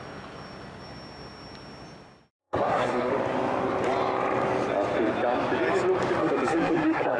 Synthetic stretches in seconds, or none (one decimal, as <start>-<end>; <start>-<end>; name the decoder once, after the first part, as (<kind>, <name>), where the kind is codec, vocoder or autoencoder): 2.4-3.1 (codec, SNAC); 6.2-7.2